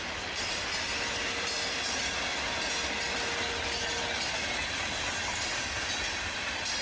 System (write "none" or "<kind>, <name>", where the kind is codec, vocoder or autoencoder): none